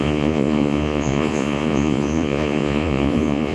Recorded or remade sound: remade